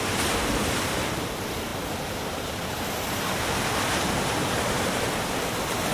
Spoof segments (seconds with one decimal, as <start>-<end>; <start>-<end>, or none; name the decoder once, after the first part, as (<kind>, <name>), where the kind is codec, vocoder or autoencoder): none